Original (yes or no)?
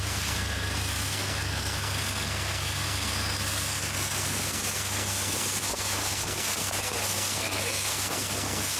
no